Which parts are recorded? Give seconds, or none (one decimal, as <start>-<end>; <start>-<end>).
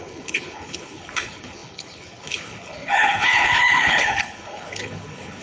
none